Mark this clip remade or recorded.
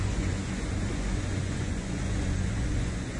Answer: remade